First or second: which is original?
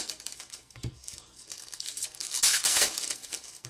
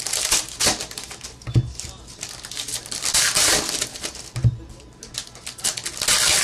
second